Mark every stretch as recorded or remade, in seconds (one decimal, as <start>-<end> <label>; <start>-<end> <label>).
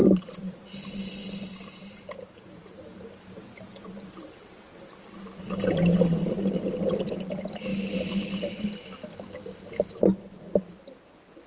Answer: 0.0-5.0 remade; 5.0-11.5 recorded